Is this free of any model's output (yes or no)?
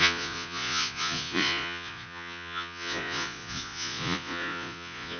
no